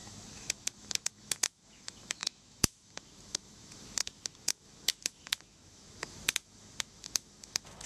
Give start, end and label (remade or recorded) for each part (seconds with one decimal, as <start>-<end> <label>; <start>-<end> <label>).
0.0-7.9 remade